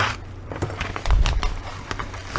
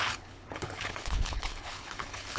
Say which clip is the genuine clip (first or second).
first